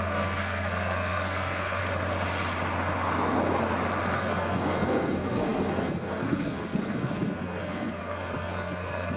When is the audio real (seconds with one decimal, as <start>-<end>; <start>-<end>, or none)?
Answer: 1.8-4.1